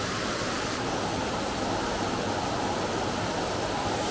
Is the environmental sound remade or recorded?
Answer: recorded